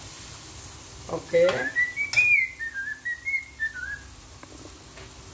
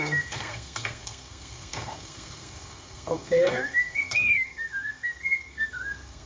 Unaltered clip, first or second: first